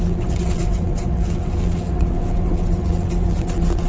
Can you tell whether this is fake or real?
fake